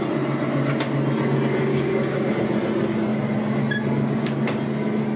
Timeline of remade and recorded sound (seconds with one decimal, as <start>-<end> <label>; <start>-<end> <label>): 0.0-1.7 recorded; 1.7-2.3 remade; 2.3-5.2 recorded